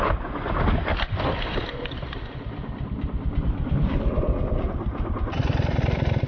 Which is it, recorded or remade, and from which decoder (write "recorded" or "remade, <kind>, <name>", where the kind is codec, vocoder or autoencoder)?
remade, vocoder, BigVGAN v2